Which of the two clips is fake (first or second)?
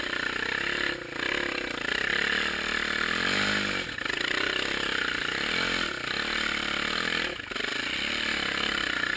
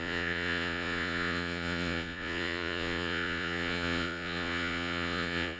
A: second